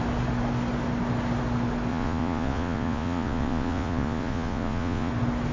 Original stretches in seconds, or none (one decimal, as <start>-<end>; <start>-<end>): 0.0-1.9; 5.1-5.5